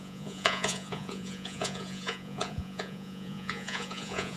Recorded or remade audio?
remade